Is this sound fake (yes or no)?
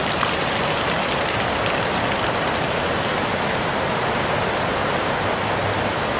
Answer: no